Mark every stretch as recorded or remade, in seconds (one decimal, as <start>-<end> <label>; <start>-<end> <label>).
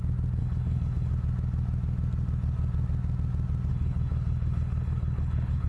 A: 0.0-0.4 recorded; 0.4-1.1 remade; 1.1-3.7 recorded; 3.7-5.7 remade